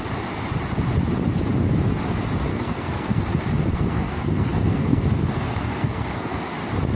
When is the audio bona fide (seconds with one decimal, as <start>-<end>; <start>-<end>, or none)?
0.0-2.5; 3.2-3.7; 6.4-7.0